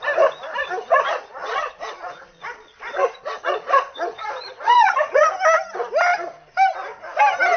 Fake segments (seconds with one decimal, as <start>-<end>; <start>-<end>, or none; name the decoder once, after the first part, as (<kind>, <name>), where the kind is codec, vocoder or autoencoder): 0.6-5.2 (vocoder, Vocos)